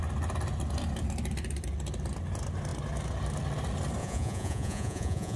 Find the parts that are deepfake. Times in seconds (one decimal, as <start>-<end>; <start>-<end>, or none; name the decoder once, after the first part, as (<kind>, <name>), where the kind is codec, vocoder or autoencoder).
4.0-5.4 (vocoder, Vocos)